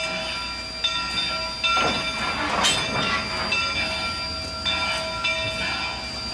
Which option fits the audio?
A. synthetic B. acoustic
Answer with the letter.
B